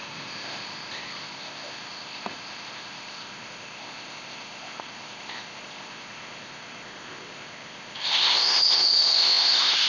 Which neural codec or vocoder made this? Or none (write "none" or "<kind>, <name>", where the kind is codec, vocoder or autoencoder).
codec, ZipCodec